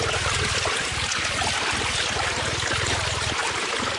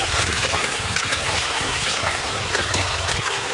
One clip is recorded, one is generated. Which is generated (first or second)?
second